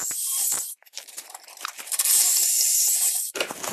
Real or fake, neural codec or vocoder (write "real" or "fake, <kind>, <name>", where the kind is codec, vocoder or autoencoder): fake, vocoder, BigVGAN v2